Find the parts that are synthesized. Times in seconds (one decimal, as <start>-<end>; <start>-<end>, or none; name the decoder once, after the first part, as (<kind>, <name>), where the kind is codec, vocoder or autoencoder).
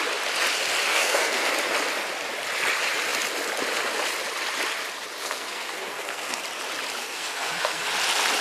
0.9-1.5 (codec, SNAC); 5.2-6.4; 7.0-7.9